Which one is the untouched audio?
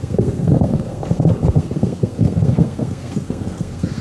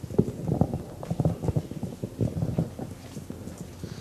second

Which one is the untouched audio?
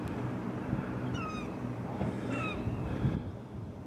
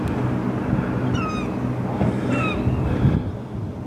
second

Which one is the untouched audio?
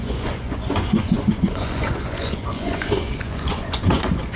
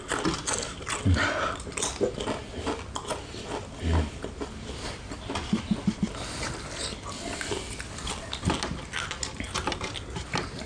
second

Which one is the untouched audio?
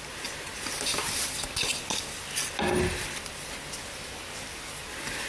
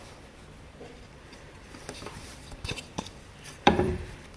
first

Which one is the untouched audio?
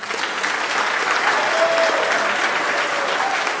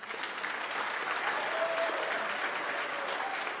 first